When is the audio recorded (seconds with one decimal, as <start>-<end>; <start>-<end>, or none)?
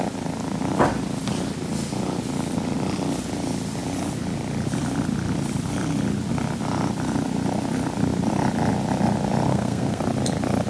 0.0-9.5; 10.0-10.7